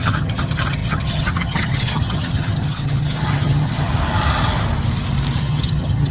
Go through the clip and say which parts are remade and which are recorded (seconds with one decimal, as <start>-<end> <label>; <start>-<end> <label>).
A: 0.0-3.9 remade; 3.9-5.4 recorded; 5.4-6.1 remade